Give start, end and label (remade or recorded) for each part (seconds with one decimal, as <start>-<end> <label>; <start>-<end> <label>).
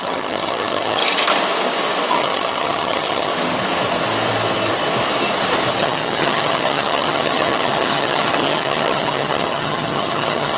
0.0-1.0 remade; 1.0-2.1 recorded; 2.1-3.3 remade; 3.3-5.8 recorded; 5.8-10.6 remade